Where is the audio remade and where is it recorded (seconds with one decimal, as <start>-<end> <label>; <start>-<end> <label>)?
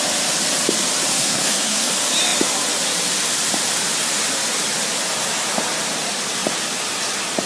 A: 0.0-1.1 recorded; 1.1-1.9 remade; 1.9-7.5 recorded